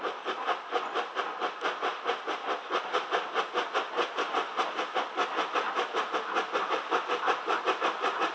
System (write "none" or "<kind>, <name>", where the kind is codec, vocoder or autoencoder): none